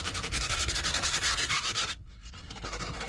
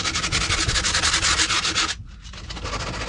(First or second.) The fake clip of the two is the first